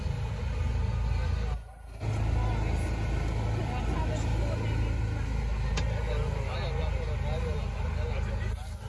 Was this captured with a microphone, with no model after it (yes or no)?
yes